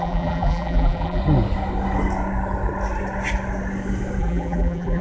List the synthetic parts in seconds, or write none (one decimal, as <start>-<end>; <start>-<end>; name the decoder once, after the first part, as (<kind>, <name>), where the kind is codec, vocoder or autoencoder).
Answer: 0.0-1.2 (vocoder, BigVGAN v2); 4.2-5.0